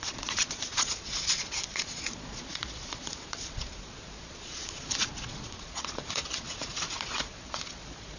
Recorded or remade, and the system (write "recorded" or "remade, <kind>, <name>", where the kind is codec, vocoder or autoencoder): remade, vocoder, Vocos